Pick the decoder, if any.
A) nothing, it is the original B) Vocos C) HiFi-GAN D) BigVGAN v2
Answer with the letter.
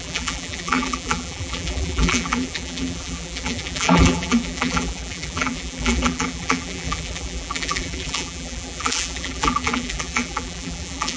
D